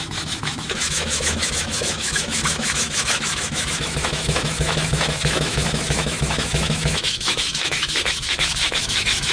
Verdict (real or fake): fake